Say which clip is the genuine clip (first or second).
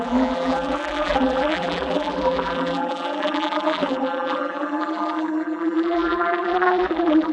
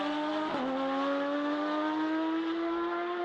second